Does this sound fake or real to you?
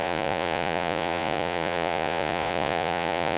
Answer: fake